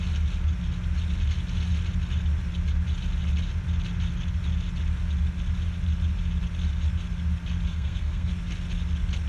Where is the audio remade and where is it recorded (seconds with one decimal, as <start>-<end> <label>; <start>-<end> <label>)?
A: 0.0-7.7 recorded; 7.7-8.3 remade; 8.3-9.3 recorded